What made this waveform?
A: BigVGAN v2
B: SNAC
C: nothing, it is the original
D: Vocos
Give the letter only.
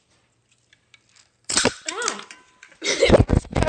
C